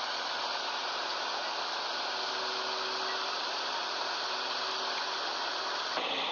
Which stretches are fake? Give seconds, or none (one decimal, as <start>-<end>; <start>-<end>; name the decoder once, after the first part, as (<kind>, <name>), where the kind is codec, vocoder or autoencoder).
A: none